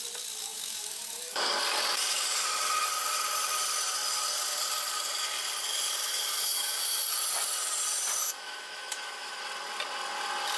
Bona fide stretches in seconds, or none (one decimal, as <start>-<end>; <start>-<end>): 0.0-0.4; 1.4-6.4; 7.0-8.2; 9.4-10.6